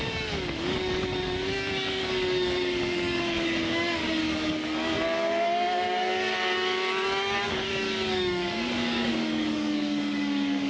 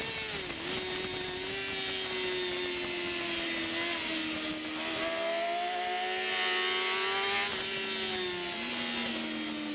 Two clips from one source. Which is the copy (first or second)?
first